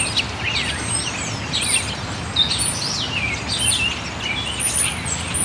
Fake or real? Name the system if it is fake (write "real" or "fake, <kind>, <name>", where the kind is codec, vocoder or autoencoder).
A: real